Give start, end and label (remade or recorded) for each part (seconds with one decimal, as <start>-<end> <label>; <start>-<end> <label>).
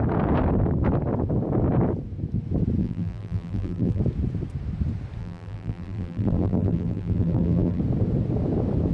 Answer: 0.0-2.8 recorded; 2.8-4.0 remade; 4.0-5.2 recorded; 5.2-7.8 remade; 7.8-8.9 recorded